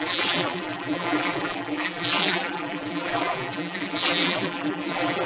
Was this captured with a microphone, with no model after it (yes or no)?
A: no